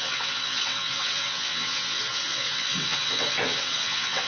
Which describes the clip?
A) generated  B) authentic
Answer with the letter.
A